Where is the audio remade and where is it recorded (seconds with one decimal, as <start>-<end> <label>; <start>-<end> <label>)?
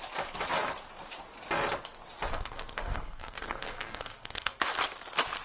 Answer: 0.0-2.3 recorded; 2.3-4.6 remade; 4.6-5.4 recorded